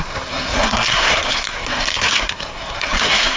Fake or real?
fake